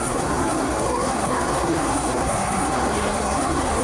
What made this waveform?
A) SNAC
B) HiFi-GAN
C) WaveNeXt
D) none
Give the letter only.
A